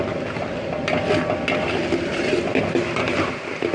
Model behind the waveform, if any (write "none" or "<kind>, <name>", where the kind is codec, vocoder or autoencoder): none